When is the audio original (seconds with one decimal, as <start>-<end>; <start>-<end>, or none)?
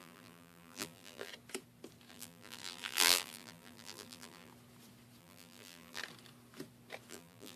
1.3-2.1; 4.5-5.2; 6.0-7.1